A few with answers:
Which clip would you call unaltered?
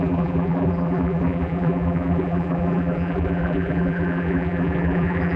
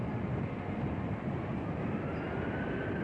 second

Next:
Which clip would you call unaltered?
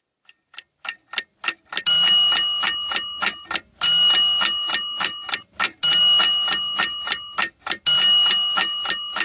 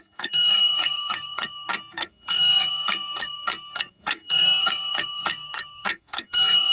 first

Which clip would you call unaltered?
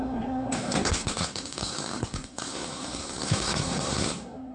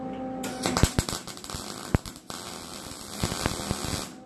second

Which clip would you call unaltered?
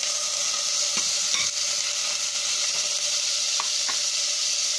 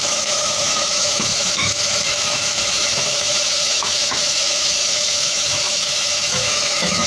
first